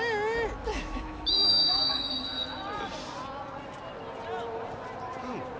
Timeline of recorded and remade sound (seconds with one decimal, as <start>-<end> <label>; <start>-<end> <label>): 0.0-0.7 recorded; 0.7-2.1 remade; 2.1-5.6 recorded